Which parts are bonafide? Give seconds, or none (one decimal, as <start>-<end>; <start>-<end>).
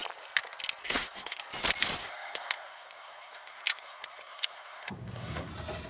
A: 0.0-0.8; 1.4-2.0; 5.5-5.9